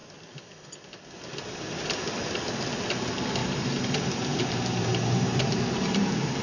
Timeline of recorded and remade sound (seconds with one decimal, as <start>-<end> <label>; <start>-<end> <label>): 0.0-3.4 recorded; 3.4-6.4 remade